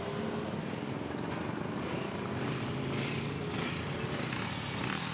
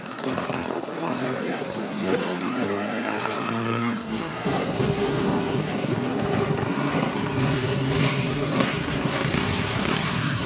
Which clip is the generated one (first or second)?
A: second